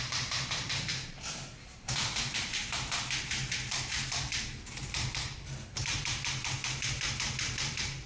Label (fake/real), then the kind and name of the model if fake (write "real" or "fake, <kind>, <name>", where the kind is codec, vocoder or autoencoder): fake, vocoder, BigVGAN v2